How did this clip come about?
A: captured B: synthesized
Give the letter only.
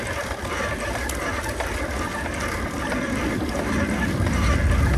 A